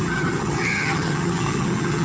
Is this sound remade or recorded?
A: remade